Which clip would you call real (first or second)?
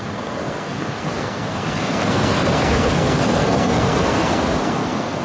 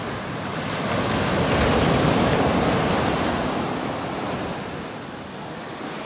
second